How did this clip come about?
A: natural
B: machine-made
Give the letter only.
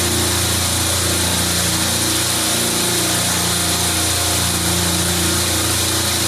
A